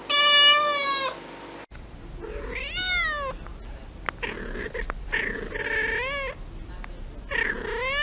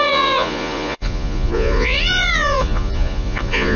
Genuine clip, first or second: first